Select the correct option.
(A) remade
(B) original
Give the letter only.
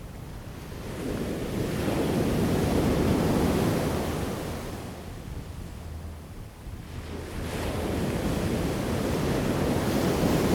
B